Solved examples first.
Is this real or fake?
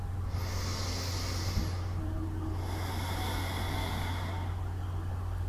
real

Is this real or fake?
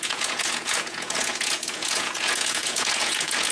fake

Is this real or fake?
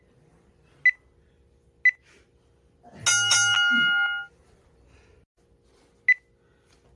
real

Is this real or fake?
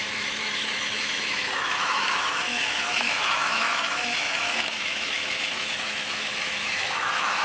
fake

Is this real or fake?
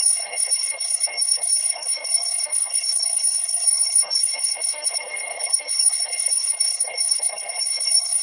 fake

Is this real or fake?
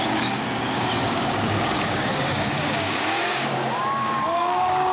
fake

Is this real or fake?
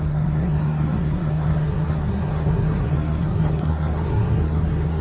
fake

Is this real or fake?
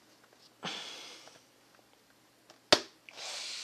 real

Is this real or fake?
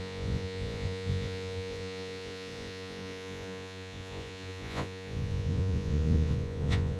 fake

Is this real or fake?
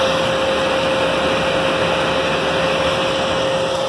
real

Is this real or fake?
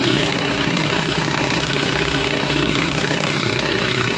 fake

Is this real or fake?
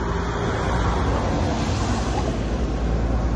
real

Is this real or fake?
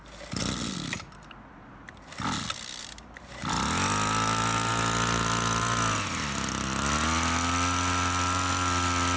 real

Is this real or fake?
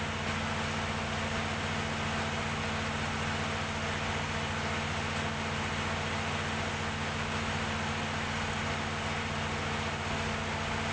real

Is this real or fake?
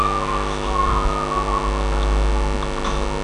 real